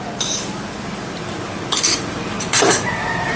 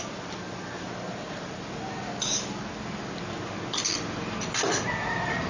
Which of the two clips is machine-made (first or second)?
first